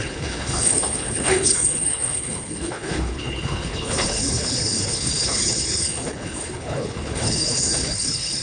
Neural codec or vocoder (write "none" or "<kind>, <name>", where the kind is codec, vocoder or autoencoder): codec, HILCodec